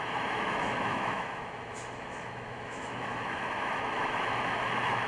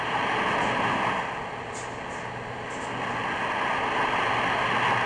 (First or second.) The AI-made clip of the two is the first